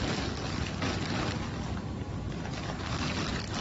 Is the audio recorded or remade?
recorded